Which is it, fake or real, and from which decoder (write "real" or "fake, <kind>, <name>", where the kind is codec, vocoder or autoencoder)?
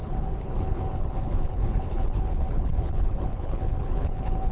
fake, codec, HILCodec